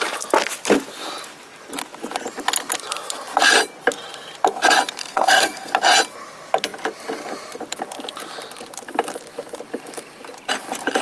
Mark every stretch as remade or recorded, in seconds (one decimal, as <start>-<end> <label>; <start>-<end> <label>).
0.0-5.0 recorded; 5.0-5.7 remade; 5.7-11.0 recorded